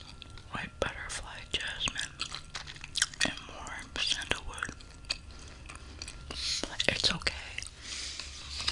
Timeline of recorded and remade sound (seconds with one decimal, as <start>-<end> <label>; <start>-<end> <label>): 0.0-6.4 recorded; 6.4-7.1 remade; 7.1-8.7 recorded